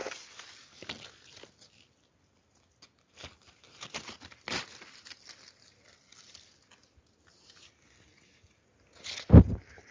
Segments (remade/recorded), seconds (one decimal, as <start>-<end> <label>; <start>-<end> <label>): 0.0-9.9 recorded